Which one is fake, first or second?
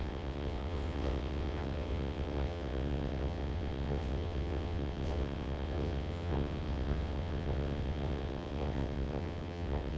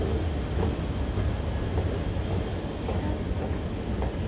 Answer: first